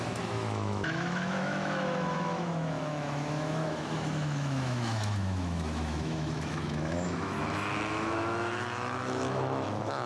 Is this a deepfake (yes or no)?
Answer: yes